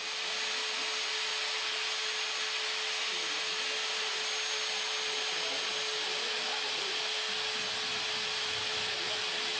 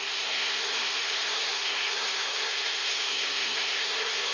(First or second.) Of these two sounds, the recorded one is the first